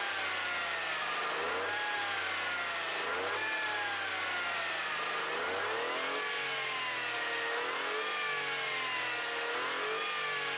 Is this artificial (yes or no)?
no